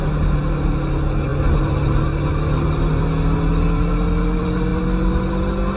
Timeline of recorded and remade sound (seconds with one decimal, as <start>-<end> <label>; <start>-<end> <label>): 0.0-5.8 recorded